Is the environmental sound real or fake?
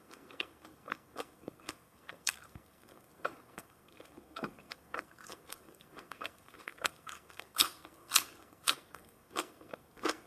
fake